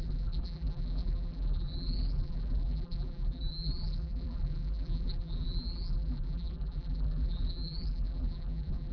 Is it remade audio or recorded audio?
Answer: remade